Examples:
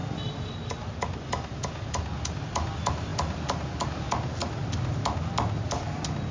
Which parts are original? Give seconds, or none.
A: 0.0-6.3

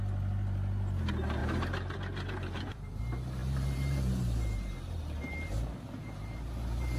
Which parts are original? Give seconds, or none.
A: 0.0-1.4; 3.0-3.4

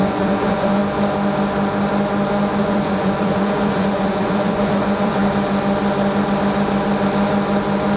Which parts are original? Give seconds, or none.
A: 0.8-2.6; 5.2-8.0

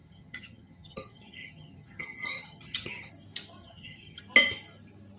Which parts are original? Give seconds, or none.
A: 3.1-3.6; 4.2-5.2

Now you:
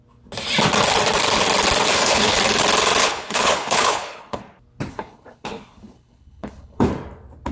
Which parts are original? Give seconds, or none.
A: 0.0-1.9; 2.4-3.0; 4.4-4.9; 6.9-7.5

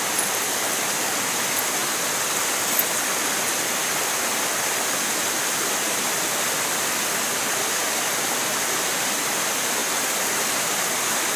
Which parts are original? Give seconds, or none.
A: 0.0-9.8; 10.9-11.4